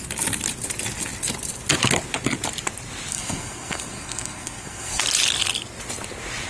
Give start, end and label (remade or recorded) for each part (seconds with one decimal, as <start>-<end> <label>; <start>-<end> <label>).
0.0-3.1 recorded; 3.1-5.0 remade; 5.0-6.5 recorded